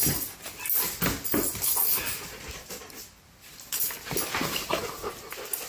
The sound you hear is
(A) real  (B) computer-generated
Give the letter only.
A